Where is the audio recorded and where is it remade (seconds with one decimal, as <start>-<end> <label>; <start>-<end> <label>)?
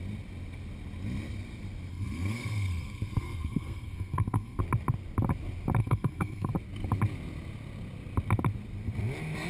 0.0-1.9 recorded; 1.9-4.6 remade; 4.6-5.8 recorded; 5.8-6.5 remade; 6.5-9.5 recorded